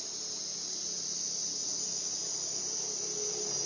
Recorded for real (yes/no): yes